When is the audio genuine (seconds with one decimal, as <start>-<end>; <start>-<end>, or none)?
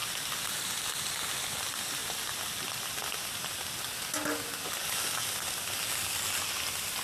0.0-7.0